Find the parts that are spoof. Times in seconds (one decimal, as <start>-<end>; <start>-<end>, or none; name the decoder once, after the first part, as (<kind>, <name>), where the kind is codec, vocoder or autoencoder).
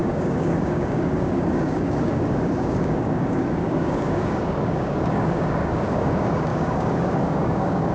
0.0-7.9 (codec, DAC)